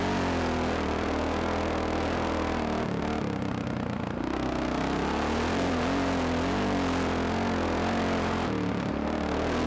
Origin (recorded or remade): recorded